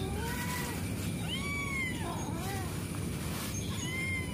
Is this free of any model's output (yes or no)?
yes